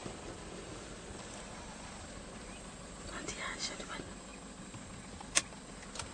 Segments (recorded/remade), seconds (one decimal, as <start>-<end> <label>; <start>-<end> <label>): 0.0-6.1 recorded